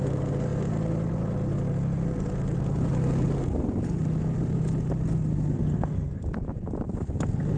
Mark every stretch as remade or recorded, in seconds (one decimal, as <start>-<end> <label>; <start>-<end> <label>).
0.0-5.6 recorded; 5.6-6.2 remade; 6.2-7.6 recorded